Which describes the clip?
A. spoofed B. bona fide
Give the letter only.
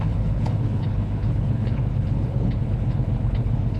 A